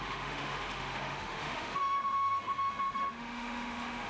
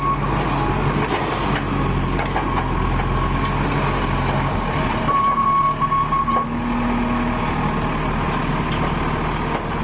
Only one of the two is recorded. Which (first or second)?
second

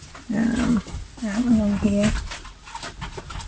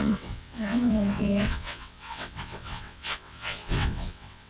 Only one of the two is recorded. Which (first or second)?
first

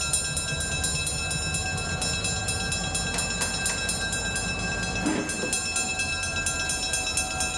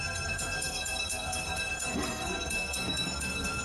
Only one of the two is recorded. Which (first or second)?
first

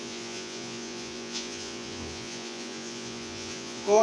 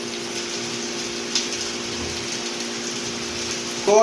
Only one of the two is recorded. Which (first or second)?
second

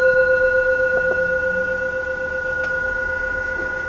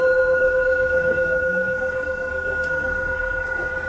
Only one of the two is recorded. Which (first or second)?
first